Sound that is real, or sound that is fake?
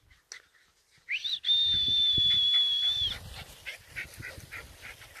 real